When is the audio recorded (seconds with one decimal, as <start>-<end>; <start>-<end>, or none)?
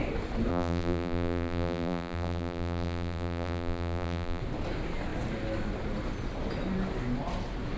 0.0-0.5; 4.4-7.8